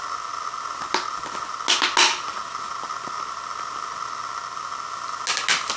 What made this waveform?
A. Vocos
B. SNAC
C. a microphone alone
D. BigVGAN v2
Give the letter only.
C